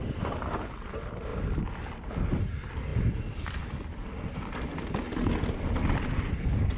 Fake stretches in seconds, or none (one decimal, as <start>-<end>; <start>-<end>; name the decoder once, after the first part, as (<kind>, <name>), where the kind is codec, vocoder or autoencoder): none